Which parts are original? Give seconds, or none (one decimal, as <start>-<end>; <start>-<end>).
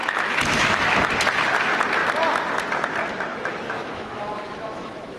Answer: 1.1-3.3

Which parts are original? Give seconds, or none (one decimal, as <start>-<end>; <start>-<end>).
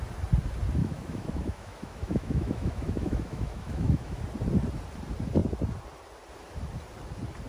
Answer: 0.0-0.8; 4.2-7.5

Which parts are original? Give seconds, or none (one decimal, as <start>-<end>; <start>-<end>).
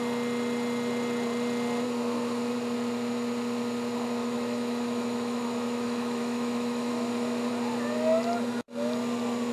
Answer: 0.0-4.2; 6.9-9.5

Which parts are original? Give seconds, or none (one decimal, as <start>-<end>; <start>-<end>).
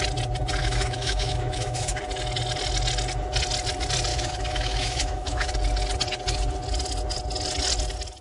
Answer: 0.0-0.6; 2.0-4.1; 5.5-8.2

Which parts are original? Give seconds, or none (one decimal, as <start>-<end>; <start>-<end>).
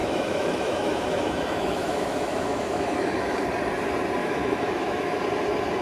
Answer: 3.5-4.2; 5.2-5.8